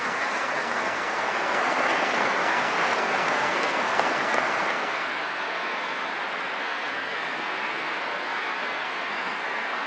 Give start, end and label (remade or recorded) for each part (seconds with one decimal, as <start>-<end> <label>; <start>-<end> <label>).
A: 0.0-6.1 remade; 6.1-6.6 recorded; 6.6-9.9 remade